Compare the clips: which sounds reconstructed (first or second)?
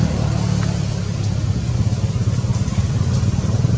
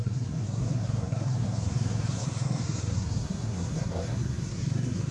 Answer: second